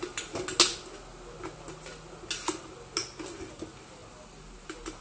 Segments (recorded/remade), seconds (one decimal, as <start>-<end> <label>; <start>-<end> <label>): 0.0-5.0 recorded